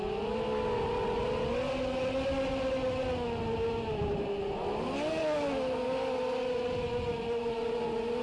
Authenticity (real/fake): real